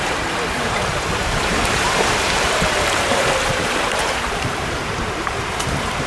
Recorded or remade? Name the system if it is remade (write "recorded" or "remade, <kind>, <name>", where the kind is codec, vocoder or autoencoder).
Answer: remade, vocoder, BigVGAN v2